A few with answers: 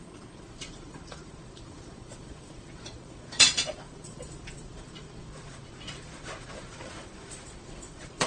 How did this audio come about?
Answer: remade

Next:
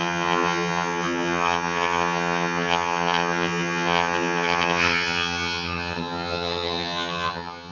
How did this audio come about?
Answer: remade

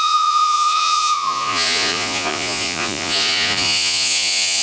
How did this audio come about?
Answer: remade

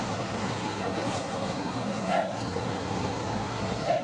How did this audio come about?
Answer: remade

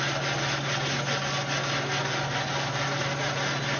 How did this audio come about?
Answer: recorded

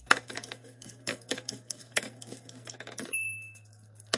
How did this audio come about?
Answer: remade